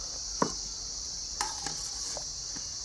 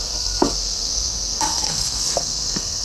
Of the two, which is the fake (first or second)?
second